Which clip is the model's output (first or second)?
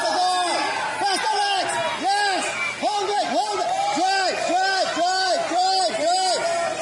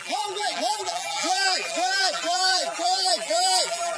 second